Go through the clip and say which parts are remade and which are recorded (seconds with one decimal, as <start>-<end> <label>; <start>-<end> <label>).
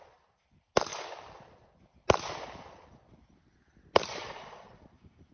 0.0-4.2 recorded; 4.2-5.3 remade